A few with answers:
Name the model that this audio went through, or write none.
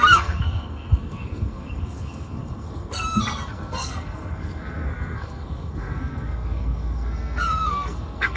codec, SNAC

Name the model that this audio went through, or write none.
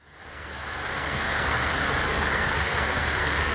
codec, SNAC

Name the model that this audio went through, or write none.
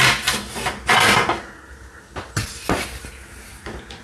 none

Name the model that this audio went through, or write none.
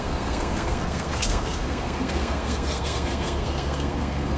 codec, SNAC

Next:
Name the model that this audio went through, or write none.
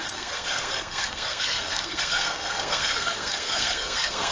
codec, SNAC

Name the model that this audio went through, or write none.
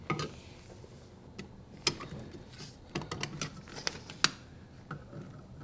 none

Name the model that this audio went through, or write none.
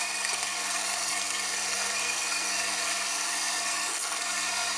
codec, SNAC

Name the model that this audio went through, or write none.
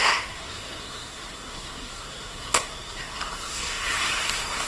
codec, SNAC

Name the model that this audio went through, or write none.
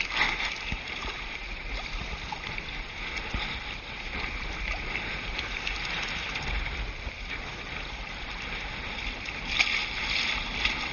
none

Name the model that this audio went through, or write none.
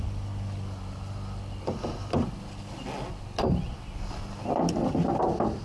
none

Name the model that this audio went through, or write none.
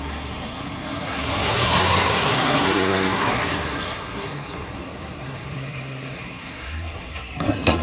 codec, SNAC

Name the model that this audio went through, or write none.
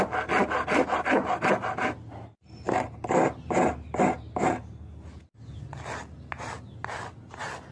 none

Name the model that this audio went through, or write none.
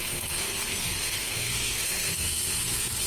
codec, SNAC